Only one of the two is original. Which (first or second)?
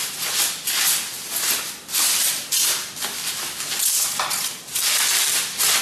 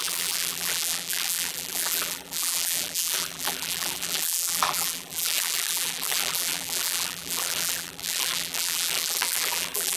first